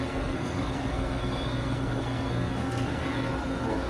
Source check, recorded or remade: remade